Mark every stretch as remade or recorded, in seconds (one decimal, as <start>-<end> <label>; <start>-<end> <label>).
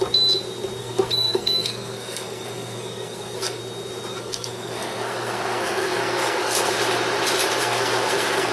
0.0-0.8 recorded; 0.8-3.6 remade; 3.6-4.1 recorded; 4.1-6.7 remade; 6.7-7.6 recorded; 7.6-8.5 remade